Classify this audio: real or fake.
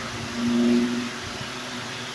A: real